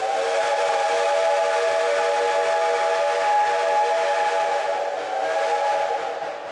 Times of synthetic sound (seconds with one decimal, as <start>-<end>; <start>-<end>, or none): none